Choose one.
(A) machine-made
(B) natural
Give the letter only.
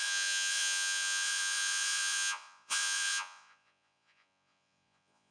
A